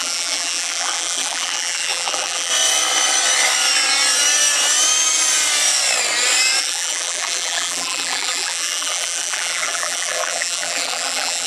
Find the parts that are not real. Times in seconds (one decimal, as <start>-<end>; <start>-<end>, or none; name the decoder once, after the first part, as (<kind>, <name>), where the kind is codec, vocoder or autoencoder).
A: 0.0-2.5 (vocoder, BigVGAN v2); 6.6-11.5